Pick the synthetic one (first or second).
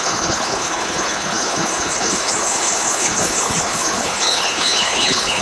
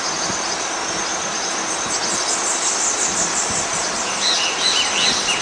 first